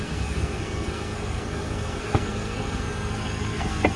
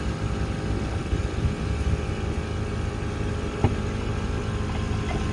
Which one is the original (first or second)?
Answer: second